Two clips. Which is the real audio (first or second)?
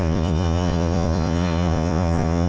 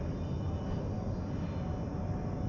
second